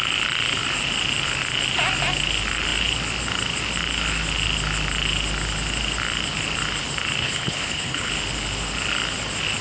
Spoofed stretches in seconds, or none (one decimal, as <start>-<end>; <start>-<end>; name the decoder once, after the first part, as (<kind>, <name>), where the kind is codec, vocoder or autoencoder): 7.2-8.1 (codec, HILCodec)